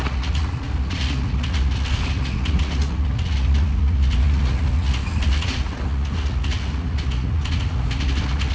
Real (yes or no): no